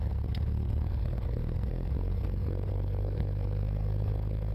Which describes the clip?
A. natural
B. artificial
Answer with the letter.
B